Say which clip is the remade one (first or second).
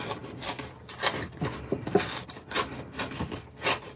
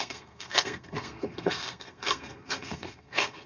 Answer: second